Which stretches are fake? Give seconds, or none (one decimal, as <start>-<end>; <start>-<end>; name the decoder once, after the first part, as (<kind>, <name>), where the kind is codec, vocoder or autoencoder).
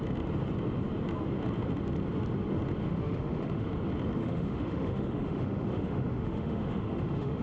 2.8-3.7 (autoencoder, DAC-VAE); 4.2-7.4